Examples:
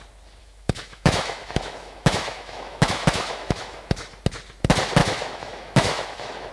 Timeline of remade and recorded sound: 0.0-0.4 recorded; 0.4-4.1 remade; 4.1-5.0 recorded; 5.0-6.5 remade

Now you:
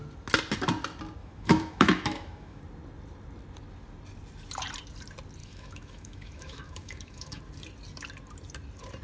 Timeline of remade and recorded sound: 0.0-1.2 recorded; 1.2-2.6 remade; 2.6-5.4 recorded; 5.4-7.4 remade; 7.4-9.0 recorded